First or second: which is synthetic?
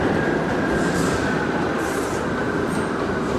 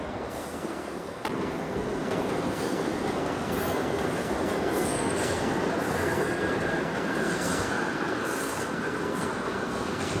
second